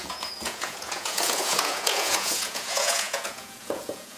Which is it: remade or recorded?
remade